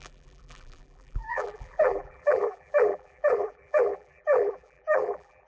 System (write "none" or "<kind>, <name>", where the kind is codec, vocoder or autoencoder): vocoder, BigVGAN v2